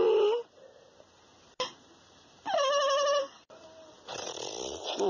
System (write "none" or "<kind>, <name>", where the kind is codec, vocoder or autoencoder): none